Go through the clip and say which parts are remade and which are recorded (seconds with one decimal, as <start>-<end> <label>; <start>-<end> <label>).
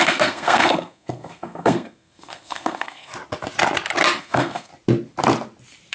0.0-3.1 remade; 3.1-4.2 recorded; 4.2-4.7 remade; 4.7-5.9 recorded